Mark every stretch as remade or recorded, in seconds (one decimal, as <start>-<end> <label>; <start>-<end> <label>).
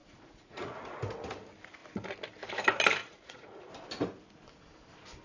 0.0-0.8 remade; 0.8-3.0 recorded; 3.0-3.7 remade; 3.7-5.2 recorded